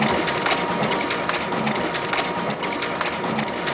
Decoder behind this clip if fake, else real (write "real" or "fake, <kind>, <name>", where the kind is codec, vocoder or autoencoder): real